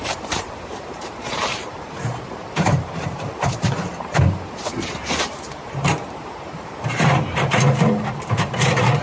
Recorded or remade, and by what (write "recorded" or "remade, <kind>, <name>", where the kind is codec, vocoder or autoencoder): remade, vocoder, BigVGAN v2